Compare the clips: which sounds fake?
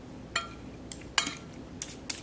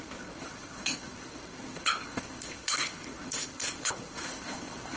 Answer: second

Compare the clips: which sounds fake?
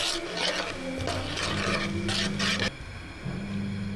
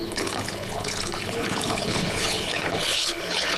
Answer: second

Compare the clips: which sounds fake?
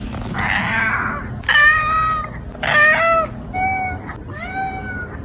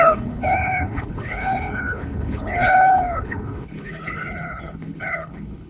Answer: second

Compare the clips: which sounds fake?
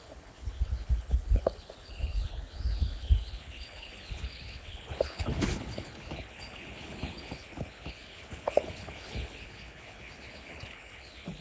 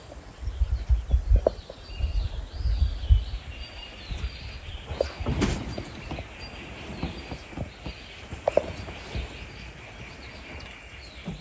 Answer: first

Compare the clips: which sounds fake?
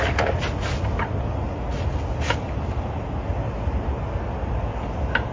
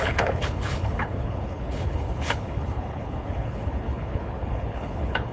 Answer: second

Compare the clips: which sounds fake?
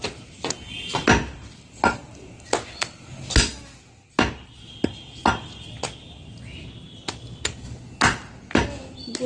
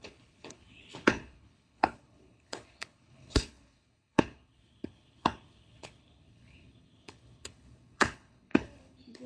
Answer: second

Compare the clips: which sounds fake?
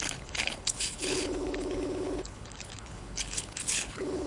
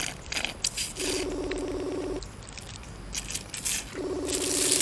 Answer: first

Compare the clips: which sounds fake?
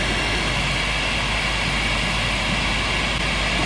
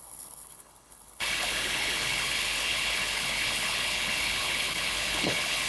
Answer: second